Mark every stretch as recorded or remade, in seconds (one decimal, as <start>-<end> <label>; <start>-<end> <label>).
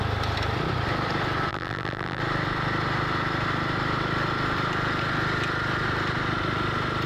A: 0.0-1.5 recorded; 1.5-2.2 remade; 2.2-7.1 recorded